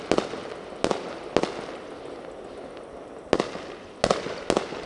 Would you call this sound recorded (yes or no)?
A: yes